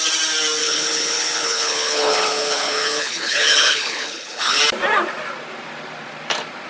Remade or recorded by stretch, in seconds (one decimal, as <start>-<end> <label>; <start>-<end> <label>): 0.0-0.6 recorded; 0.6-4.6 remade; 4.6-6.7 recorded